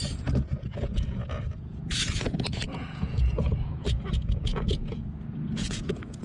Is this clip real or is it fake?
fake